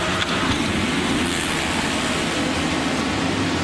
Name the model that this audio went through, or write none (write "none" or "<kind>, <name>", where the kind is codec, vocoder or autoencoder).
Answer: none